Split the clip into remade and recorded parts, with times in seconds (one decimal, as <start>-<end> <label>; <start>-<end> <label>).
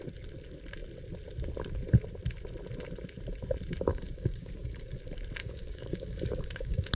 0.0-3.9 recorded; 3.9-5.0 remade; 5.0-5.4 recorded; 5.4-6.9 remade